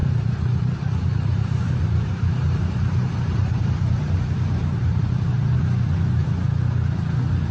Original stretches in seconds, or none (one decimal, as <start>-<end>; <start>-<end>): 3.9-4.6; 5.1-7.5